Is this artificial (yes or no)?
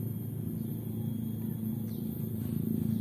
no